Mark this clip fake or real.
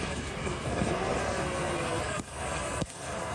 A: fake